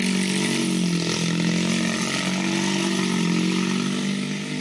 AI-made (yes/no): no